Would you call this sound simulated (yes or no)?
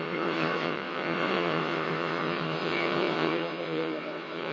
yes